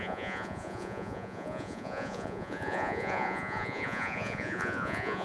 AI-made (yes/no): yes